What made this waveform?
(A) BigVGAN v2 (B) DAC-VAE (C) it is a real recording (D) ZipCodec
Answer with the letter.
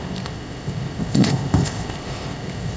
D